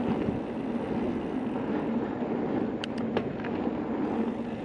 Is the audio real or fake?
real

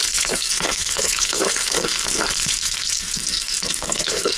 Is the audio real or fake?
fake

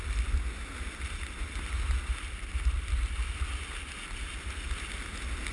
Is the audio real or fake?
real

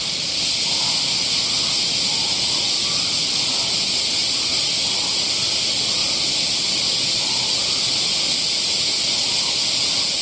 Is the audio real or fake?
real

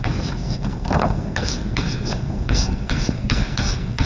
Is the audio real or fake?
fake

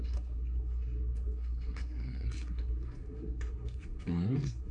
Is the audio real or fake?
fake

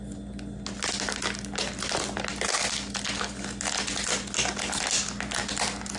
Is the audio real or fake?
real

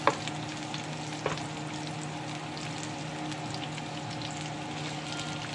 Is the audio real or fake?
real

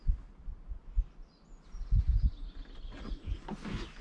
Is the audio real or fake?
real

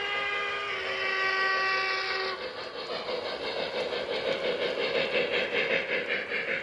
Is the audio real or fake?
real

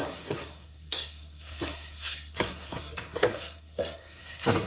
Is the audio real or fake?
fake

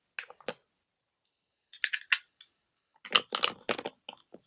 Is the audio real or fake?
real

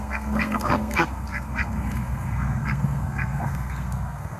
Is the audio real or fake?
fake